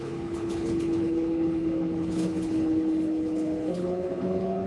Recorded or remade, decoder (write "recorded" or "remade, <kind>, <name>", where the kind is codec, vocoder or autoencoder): remade, codec, HILCodec